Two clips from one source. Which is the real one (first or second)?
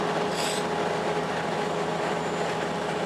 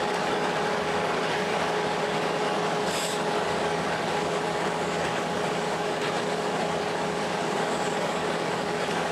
first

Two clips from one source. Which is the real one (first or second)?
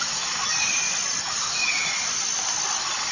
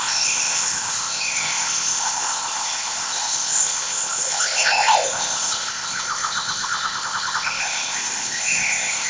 first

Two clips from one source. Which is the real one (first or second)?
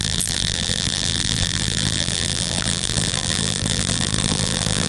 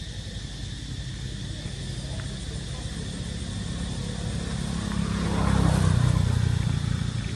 second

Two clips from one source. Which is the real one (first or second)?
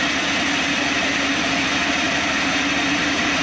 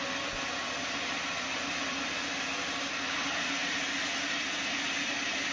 second